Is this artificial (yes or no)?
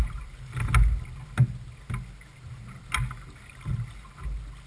no